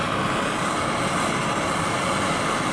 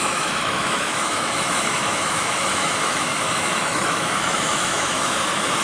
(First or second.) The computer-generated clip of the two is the second